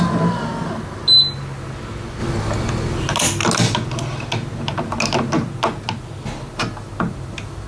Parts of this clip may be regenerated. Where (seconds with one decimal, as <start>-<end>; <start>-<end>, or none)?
none